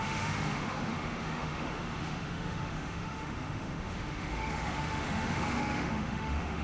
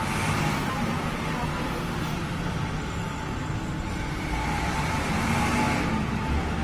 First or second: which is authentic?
second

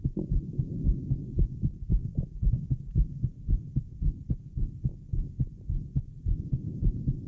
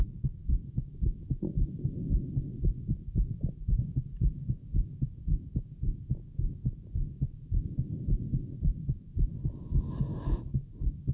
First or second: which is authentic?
first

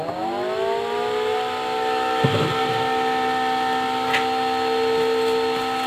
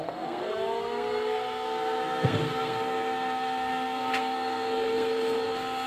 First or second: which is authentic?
first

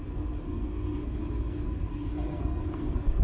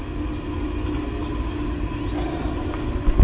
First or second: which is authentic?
second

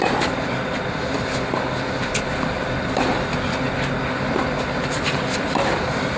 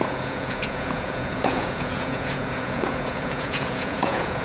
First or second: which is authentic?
first